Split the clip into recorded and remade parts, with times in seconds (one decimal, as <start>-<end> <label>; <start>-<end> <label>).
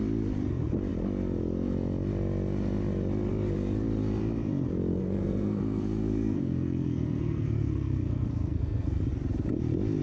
0.0-4.9 recorded; 4.9-9.0 remade; 9.0-10.0 recorded